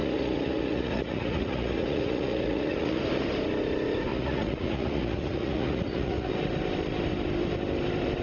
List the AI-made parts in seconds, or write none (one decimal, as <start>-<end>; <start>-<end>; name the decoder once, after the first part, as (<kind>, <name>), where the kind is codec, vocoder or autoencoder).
0.0-3.0 (vocoder, Vocos); 4.1-6.3